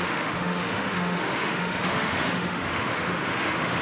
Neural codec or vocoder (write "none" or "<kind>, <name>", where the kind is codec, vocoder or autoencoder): autoencoder, DAC-VAE